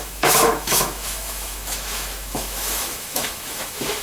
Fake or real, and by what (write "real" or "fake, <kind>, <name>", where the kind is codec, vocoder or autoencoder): fake, autoencoder, DAC-VAE